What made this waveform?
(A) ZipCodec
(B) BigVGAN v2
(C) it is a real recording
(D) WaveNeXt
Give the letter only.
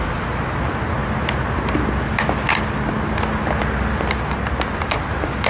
C